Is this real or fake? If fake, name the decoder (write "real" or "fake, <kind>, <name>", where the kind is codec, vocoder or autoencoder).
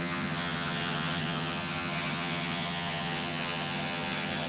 fake, vocoder, HiFi-GAN